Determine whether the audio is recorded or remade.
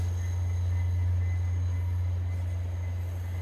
recorded